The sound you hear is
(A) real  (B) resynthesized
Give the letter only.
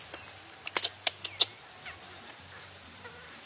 A